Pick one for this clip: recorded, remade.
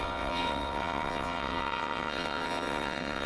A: remade